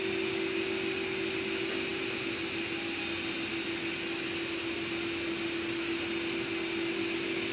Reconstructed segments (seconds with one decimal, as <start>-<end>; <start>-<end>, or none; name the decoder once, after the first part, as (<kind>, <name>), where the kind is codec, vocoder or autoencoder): none